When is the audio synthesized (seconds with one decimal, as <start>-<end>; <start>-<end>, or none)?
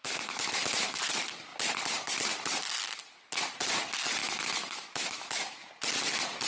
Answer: 0.0-1.1; 4.2-5.7